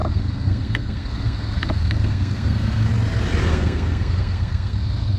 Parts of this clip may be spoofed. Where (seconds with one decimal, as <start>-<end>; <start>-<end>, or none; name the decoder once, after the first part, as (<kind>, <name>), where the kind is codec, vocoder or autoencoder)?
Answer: 0.0-2.9 (codec, SNAC); 3.5-5.2